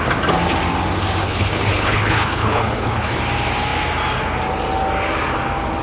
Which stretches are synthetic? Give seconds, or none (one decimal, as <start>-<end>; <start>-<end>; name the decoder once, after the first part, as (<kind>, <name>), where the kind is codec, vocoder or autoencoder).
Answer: 1.2-3.2 (codec, HILCodec)